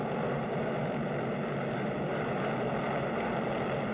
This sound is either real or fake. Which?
real